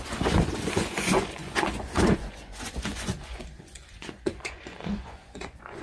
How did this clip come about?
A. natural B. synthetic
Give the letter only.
B